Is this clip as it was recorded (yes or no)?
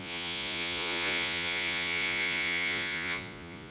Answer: no